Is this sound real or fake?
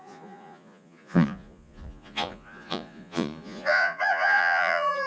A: fake